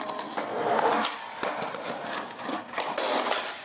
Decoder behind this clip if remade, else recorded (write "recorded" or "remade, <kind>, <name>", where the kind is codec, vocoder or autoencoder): recorded